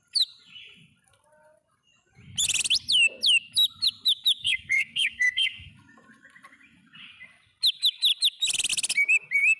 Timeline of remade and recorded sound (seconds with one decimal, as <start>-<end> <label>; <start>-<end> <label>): 0.0-4.4 recorded; 4.4-5.7 remade; 5.7-9.6 recorded